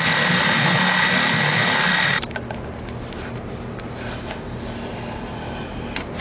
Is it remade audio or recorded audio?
recorded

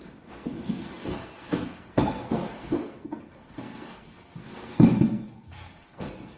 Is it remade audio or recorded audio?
remade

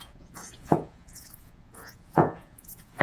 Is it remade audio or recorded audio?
remade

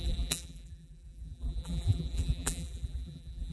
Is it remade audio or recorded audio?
remade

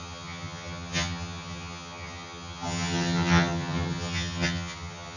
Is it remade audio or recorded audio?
remade